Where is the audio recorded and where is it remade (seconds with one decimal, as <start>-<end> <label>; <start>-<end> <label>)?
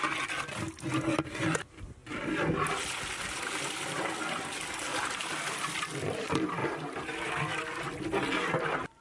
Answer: 0.0-4.9 recorded; 4.9-5.7 remade; 5.7-6.6 recorded; 6.6-7.3 remade; 7.3-9.0 recorded